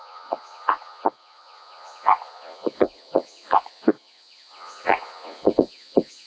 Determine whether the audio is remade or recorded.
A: remade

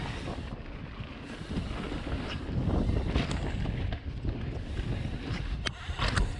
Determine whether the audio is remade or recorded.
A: recorded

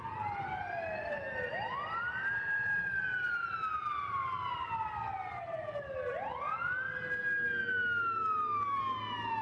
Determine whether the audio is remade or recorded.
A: recorded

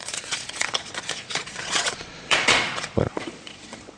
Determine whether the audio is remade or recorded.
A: remade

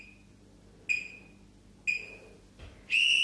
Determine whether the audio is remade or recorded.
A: recorded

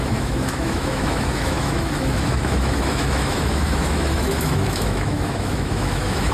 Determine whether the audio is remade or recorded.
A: remade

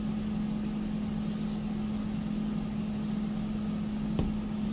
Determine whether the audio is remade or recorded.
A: recorded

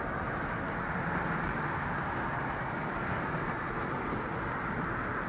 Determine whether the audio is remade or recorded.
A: recorded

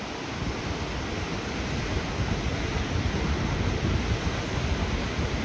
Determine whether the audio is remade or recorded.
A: recorded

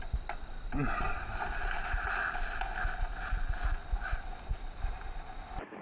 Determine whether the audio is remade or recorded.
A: recorded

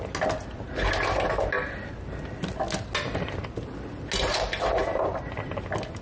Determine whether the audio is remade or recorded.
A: recorded